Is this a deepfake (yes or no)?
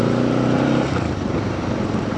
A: yes